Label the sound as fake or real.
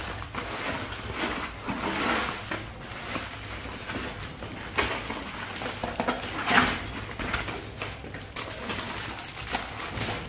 real